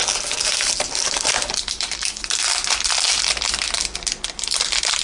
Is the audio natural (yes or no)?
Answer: yes